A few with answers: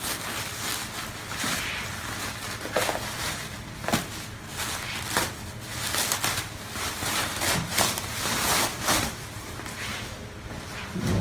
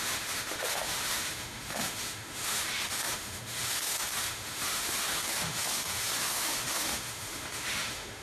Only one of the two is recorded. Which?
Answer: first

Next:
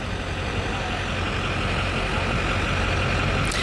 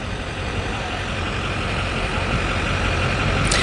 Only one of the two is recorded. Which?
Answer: first